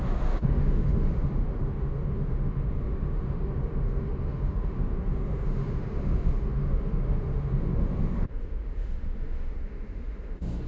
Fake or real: fake